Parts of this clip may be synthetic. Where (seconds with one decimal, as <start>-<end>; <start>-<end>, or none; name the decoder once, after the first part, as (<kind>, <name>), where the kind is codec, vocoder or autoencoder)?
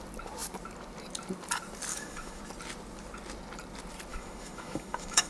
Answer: 1.9-2.4 (autoencoder, DAC-VAE); 4.1-5.3